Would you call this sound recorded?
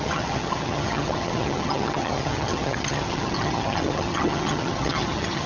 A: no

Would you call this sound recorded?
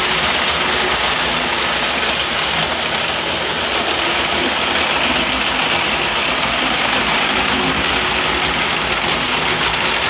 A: yes